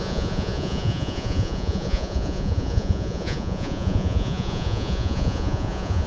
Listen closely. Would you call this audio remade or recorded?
remade